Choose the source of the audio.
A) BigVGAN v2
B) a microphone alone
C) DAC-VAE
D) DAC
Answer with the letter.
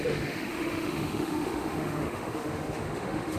C